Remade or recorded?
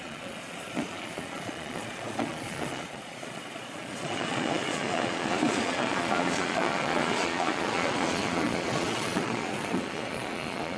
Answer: remade